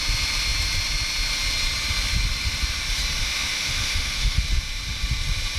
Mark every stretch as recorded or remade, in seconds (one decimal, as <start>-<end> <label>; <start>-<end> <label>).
0.0-3.2 recorded; 3.2-4.4 remade; 4.4-5.6 recorded